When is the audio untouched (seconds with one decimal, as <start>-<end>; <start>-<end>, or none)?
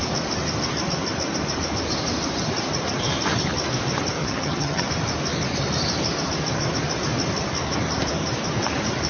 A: 0.0-4.2; 4.9-9.1